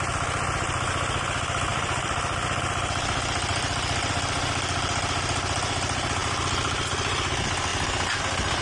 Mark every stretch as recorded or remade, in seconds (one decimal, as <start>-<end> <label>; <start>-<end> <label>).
0.0-1.7 recorded; 1.7-2.6 remade; 2.6-3.5 recorded; 3.5-4.1 remade; 4.1-6.2 recorded; 6.2-7.3 remade; 7.3-8.6 recorded